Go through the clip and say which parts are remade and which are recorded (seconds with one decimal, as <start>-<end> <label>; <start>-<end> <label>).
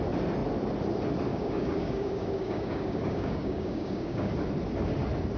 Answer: 0.0-1.3 recorded; 1.3-4.3 remade; 4.3-5.4 recorded